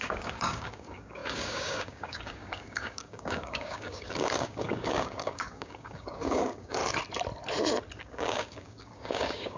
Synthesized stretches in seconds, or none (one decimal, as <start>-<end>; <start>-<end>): 0.0-6.8; 8.0-9.6

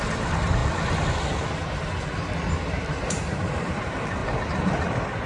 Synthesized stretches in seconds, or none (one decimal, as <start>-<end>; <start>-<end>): 0.0-0.6; 3.0-4.2

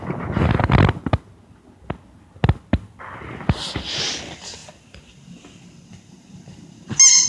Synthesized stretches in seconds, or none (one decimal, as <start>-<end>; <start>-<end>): none